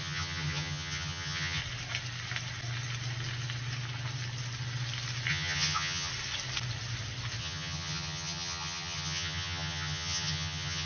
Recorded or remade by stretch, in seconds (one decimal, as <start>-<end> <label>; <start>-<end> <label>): 0.0-1.6 remade; 1.6-5.3 recorded; 5.3-6.1 remade; 6.1-7.4 recorded; 7.4-10.9 remade